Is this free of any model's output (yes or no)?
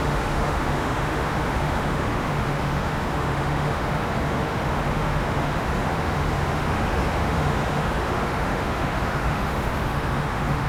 no